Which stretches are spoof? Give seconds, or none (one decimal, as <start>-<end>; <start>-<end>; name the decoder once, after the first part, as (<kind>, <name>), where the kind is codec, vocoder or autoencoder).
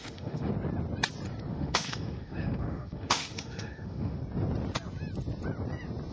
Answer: 0.0-0.5 (autoencoder, DAC-VAE); 1.5-4.2